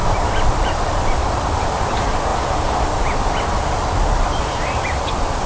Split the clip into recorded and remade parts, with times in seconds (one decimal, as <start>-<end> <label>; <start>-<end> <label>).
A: 0.0-2.3 remade; 2.3-4.4 recorded; 4.4-5.5 remade